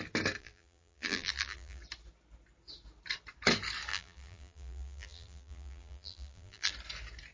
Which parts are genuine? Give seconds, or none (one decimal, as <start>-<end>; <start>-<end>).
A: 0.0-0.4; 1.8-3.9; 6.7-7.3